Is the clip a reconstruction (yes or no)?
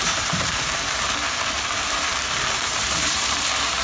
yes